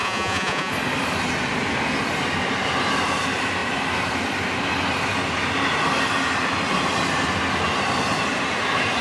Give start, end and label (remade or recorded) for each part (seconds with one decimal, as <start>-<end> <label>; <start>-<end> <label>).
0.0-0.7 remade; 0.7-9.0 recorded